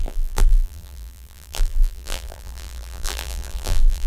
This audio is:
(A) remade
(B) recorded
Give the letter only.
A